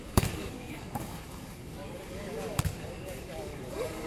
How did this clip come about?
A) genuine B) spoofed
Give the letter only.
B